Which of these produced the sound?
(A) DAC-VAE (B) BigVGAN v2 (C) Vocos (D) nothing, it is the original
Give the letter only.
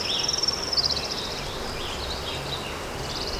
D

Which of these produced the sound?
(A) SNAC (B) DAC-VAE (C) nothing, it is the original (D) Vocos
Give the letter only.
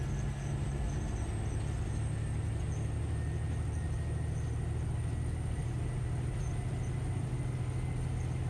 C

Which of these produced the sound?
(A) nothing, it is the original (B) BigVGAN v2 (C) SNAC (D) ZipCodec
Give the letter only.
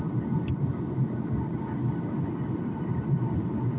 A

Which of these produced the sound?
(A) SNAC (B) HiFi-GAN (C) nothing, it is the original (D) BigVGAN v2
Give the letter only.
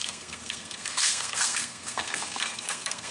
A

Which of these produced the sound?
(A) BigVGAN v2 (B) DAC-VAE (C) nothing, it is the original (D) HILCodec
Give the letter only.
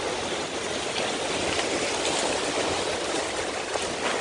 C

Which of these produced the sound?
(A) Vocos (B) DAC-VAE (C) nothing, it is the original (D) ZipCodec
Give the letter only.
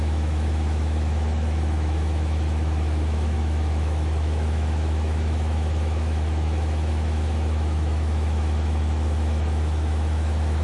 B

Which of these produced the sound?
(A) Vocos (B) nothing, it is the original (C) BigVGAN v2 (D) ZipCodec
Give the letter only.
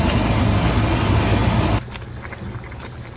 B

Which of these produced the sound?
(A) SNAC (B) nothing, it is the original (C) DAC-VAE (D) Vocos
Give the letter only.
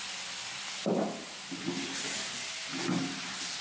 B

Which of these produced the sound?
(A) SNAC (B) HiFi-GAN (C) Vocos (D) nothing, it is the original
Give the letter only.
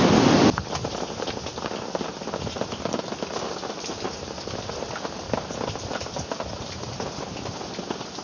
D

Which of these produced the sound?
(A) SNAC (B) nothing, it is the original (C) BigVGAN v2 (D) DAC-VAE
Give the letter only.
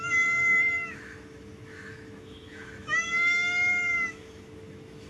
D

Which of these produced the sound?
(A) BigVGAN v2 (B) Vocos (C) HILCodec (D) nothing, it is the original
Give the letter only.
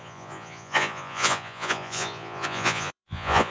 B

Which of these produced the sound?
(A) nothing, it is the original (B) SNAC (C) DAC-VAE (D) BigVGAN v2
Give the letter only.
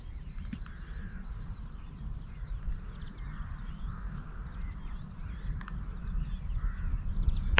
D